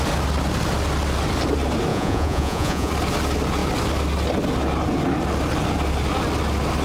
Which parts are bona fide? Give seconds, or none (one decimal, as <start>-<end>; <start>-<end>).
0.0-1.9; 2.9-6.8

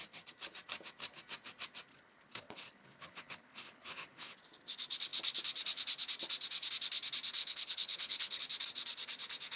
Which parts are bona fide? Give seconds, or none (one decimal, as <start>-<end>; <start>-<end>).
0.0-1.9; 4.4-7.4; 8.4-9.6

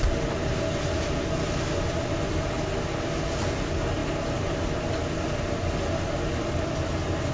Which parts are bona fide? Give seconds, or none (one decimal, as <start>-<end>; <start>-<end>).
0.0-7.3

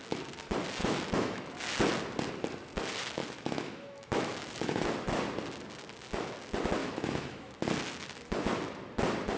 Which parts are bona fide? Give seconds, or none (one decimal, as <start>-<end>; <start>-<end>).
0.0-0.8; 1.6-3.2; 4.9-6.8; 7.6-9.4

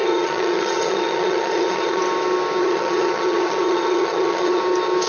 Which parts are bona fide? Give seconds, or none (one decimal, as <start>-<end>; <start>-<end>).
2.0-2.6; 4.6-5.1

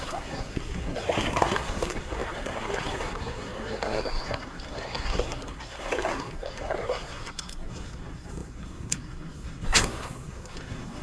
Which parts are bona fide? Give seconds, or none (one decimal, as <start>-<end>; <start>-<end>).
none

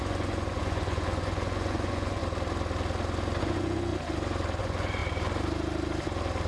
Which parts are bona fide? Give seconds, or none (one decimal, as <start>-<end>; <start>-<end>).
2.2-3.4; 3.9-4.6; 5.0-6.5